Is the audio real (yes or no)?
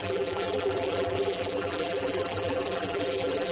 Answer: no